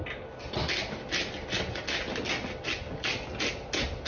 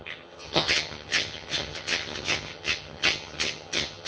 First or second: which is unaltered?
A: first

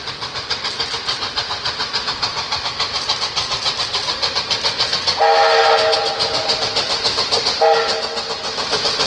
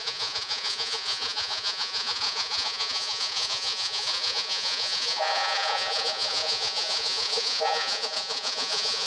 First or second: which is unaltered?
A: first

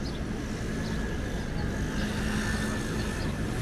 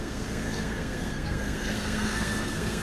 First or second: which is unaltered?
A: first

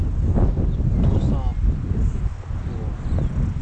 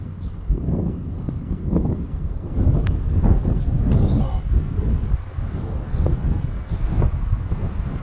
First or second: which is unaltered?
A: first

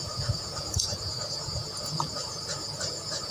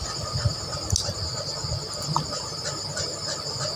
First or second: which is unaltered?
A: second